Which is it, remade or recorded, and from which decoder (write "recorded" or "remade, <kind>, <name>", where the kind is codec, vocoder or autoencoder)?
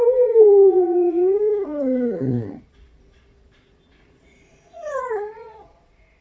remade, vocoder, Vocos